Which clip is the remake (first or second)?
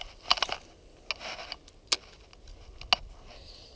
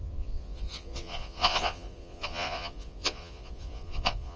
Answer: second